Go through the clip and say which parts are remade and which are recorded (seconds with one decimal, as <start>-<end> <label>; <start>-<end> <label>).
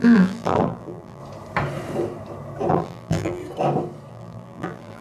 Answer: 0.0-1.2 remade; 1.2-2.7 recorded; 2.7-3.4 remade; 3.4-4.1 recorded; 4.1-5.0 remade